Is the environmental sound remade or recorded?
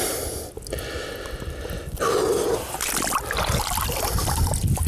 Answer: recorded